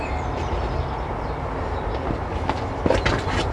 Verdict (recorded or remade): recorded